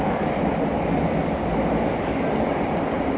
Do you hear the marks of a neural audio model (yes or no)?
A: no